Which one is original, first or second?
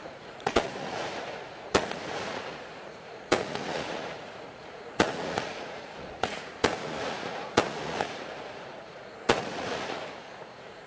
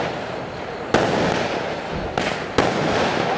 second